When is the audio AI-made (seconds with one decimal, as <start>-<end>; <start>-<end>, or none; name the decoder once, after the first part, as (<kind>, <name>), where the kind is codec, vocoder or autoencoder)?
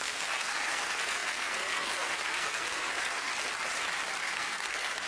0.0-3.3 (codec, SNAC); 4.2-5.1